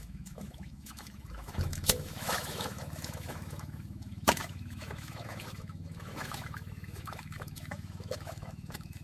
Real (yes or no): no